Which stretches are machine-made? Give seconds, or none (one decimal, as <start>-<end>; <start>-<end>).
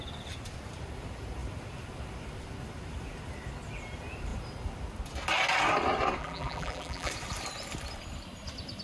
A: 6.2-7.1